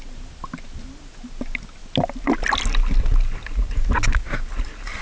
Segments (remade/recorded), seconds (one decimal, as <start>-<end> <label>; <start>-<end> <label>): 0.0-5.0 recorded